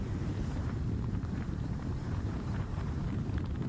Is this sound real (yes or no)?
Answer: no